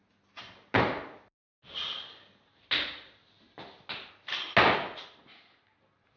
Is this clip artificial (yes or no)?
no